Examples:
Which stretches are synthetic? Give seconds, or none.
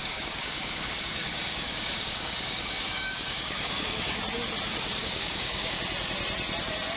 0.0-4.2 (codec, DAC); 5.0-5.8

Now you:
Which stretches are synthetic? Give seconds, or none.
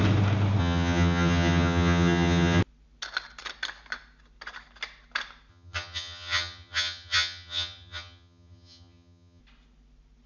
0.6-2.6 (vocoder, HiFi-GAN); 5.5-9.4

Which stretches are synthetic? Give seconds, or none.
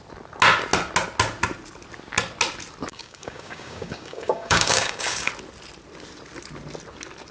2.9-5.3 (codec, DAC)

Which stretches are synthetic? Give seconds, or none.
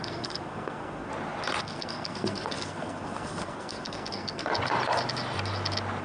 0.0-1.1 (codec, SNAC); 1.6-4.5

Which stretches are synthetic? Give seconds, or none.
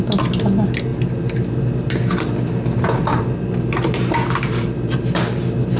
none